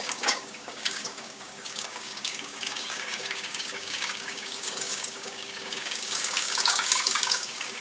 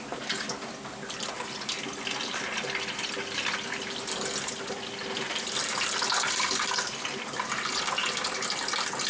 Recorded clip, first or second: second